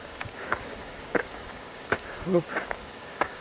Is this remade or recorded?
remade